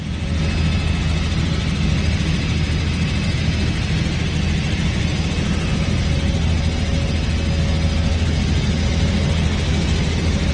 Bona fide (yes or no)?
yes